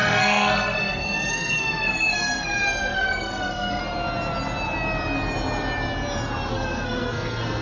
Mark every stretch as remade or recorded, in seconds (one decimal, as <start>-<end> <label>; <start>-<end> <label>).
0.0-3.8 remade; 3.8-6.5 recorded; 6.5-7.6 remade